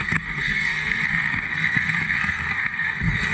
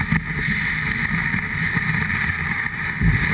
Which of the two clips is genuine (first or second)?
second